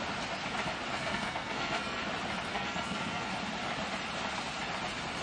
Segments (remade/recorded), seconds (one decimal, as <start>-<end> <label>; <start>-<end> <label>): 0.0-0.9 recorded; 0.9-2.0 remade; 2.0-2.5 recorded; 2.5-3.3 remade; 3.3-5.2 recorded